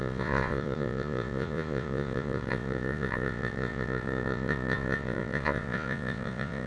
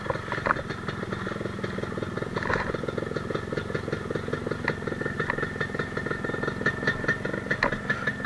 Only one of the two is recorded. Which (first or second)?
second